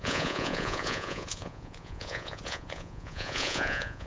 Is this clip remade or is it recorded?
remade